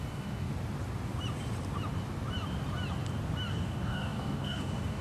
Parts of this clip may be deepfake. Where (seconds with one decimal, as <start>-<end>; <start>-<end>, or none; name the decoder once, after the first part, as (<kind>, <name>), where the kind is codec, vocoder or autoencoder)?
0.0-0.5 (codec, DAC); 3.5-5.0

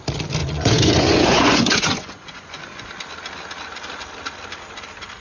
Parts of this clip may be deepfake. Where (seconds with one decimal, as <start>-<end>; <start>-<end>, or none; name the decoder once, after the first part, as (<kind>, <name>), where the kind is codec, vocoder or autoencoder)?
0.4-2.9 (vocoder, Vocos)